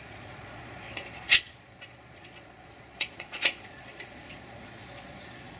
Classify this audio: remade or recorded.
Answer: remade